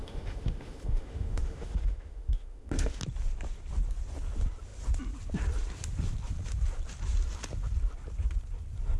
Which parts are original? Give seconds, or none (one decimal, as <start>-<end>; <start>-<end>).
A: 3.0-9.0